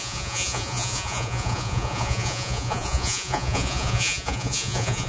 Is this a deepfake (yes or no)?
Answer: yes